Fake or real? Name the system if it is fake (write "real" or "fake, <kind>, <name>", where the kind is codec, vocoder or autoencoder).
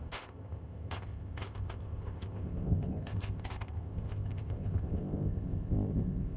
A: fake, codec, ZipCodec